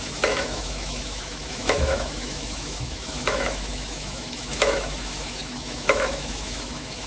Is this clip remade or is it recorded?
remade